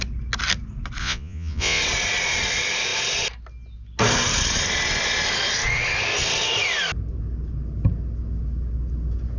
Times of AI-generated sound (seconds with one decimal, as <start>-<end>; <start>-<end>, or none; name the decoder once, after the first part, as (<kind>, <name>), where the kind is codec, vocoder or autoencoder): 1.0-1.8 (vocoder, Vocos)

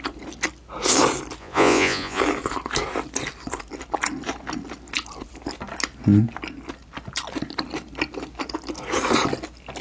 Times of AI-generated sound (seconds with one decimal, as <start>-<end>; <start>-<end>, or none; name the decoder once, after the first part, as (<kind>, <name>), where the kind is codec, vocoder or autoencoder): 1.4-2.2 (vocoder, Vocos)